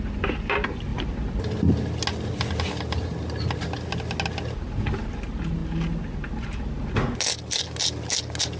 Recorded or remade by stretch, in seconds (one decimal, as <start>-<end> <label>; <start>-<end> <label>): 0.0-8.6 recorded